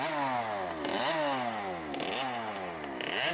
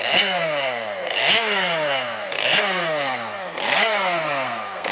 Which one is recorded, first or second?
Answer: first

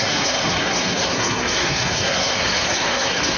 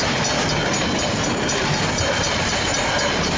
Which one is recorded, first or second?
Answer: second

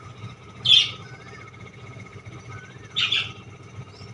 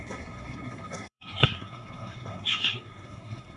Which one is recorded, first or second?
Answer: first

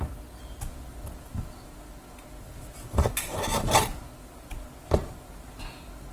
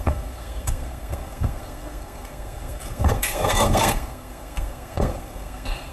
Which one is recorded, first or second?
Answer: first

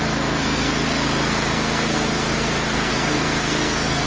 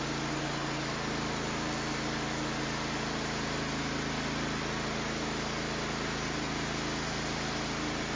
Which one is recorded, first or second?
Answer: second